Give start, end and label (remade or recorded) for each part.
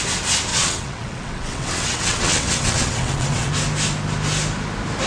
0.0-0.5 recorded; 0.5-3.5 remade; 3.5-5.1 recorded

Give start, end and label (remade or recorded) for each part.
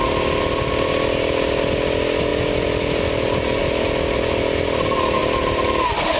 0.0-2.3 recorded; 2.3-3.6 remade; 3.6-6.2 recorded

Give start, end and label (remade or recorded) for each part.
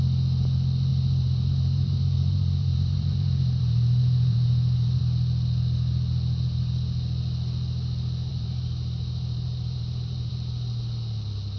0.0-0.9 recorded; 0.9-5.0 remade; 5.0-8.3 recorded; 8.3-10.3 remade; 10.3-11.6 recorded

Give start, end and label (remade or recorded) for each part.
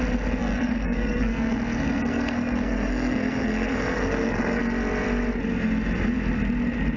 0.0-0.4 recorded; 0.4-4.6 remade; 4.6-7.0 recorded